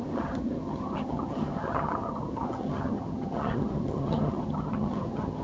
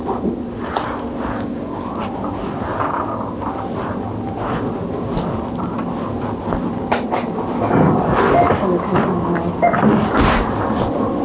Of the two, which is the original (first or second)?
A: second